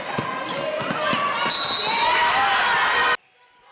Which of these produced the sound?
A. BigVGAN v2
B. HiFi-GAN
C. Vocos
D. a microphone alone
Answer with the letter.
D